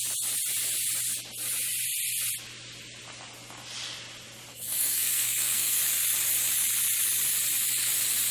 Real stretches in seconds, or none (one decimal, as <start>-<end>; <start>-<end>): 0.0-4.5; 5.8-8.3